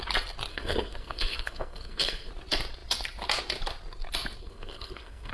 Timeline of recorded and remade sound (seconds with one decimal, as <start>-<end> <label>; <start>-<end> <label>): 0.0-0.5 recorded; 0.5-2.3 remade; 2.3-4.4 recorded; 4.4-5.3 remade